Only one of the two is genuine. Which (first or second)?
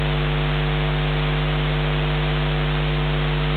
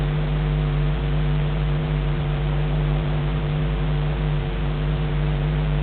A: first